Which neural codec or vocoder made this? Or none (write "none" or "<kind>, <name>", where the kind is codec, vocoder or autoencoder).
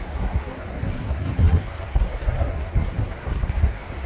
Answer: codec, SNAC